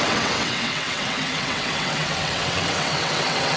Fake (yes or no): yes